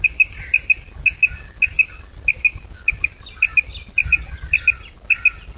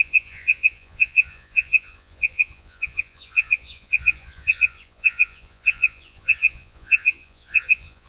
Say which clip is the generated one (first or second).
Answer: second